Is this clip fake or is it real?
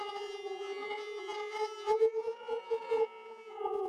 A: fake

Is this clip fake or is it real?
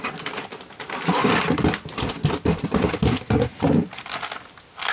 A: real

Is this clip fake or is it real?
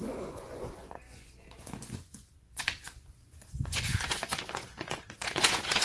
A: fake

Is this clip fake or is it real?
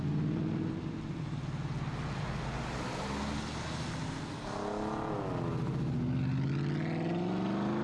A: real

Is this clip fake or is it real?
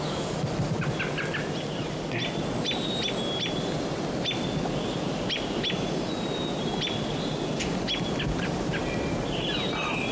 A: real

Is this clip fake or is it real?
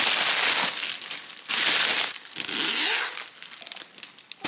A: real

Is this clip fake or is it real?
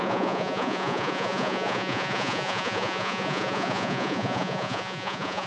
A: fake